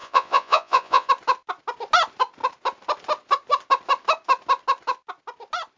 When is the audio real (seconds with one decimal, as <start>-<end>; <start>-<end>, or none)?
1.1-5.8